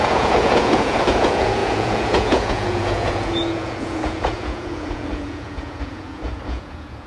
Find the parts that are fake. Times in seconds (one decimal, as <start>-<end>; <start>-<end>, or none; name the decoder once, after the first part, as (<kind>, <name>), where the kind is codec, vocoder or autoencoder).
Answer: 0.0-7.1 (vocoder, Vocos)